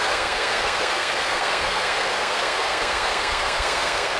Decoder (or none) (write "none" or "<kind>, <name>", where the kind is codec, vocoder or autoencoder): codec, SNAC